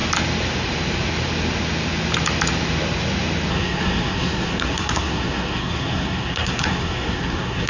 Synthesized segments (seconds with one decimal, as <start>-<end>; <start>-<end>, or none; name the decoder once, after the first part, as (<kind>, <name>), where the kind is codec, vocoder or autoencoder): 3.5-7.7 (codec, SNAC)